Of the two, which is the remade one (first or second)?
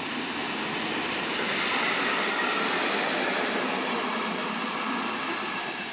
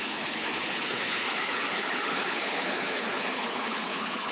second